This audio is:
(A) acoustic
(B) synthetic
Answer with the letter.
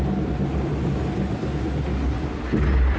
A